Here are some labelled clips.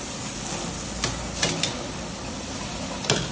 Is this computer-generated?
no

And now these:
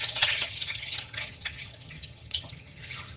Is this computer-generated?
yes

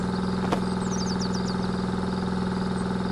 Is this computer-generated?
no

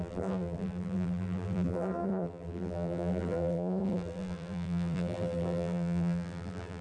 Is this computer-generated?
yes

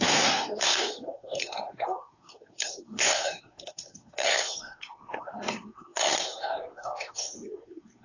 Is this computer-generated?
yes